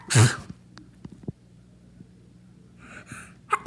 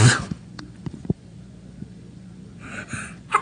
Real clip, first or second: first